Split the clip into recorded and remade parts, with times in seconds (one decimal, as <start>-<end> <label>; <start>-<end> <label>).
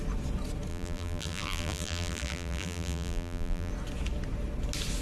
0.0-0.7 recorded; 0.7-3.7 remade; 3.7-5.0 recorded